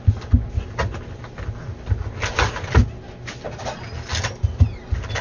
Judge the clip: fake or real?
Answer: real